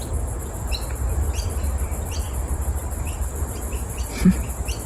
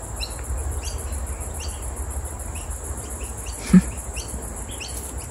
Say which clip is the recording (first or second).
second